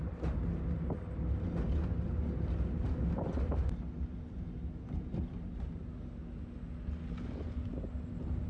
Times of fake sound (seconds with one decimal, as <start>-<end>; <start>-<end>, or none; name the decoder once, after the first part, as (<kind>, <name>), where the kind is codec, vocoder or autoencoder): none